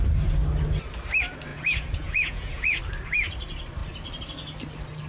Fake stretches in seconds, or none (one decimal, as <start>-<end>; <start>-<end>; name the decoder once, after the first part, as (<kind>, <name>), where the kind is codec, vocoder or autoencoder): 1.5-2.8 (vocoder, Vocos)